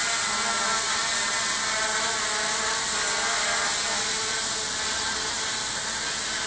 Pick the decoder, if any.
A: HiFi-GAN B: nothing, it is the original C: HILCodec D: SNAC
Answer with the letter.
B